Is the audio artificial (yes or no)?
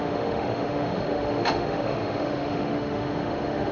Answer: yes